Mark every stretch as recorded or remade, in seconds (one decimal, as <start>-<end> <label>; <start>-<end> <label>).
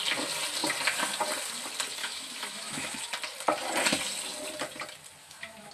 0.0-2.0 recorded; 2.0-2.9 remade; 2.9-5.2 recorded; 5.2-5.7 remade